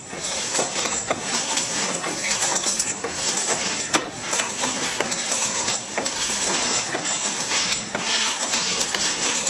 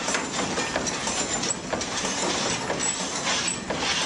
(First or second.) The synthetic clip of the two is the first